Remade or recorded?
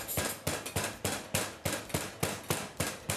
recorded